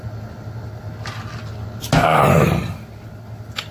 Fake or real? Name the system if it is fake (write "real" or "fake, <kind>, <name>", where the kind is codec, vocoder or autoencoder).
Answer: real